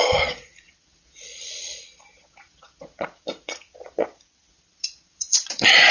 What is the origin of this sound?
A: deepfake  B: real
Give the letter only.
A